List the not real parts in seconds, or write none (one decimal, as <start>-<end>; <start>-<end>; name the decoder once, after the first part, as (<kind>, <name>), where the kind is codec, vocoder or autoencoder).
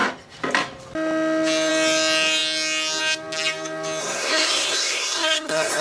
4.0-5.8 (codec, SNAC)